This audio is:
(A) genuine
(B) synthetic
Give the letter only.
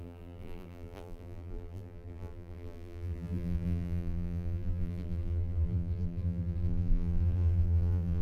B